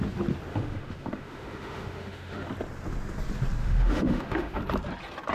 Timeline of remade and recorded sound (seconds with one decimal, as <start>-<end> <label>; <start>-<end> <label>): 0.0-0.5 recorded; 0.5-2.5 remade; 2.5-3.6 recorded; 3.6-4.6 remade; 4.6-5.3 recorded